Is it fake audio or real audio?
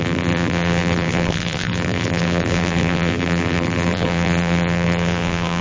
fake